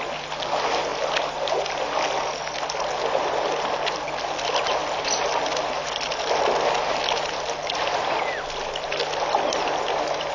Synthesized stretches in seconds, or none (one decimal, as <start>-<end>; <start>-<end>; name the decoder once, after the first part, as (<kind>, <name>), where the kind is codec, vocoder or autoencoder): none